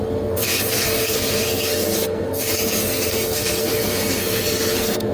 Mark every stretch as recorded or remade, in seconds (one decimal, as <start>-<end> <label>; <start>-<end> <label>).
0.0-5.1 remade